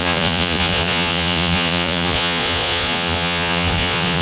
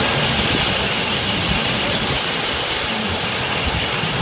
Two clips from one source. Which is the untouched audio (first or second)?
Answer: second